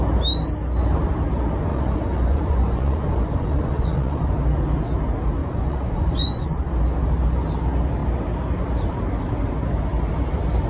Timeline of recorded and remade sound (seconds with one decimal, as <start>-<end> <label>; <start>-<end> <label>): 0.0-1.7 recorded; 1.7-4.3 remade; 4.3-5.4 recorded; 5.4-6.7 remade; 6.7-10.7 recorded

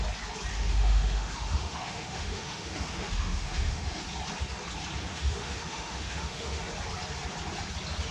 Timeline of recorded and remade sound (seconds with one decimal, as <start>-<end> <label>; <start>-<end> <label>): 0.0-0.5 recorded; 0.5-4.0 remade; 4.0-5.1 recorded; 5.1-6.6 remade; 6.6-8.1 recorded

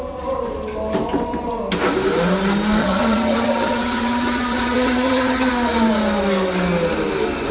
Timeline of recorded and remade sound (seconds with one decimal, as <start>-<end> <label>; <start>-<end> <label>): 0.0-2.8 recorded; 2.8-5.5 remade; 5.5-7.5 recorded

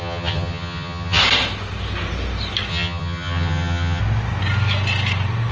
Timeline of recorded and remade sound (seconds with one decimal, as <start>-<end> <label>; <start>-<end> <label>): 0.0-1.2 remade; 1.2-2.7 recorded; 2.7-4.0 remade; 4.0-5.5 recorded